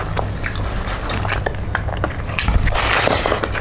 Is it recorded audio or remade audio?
recorded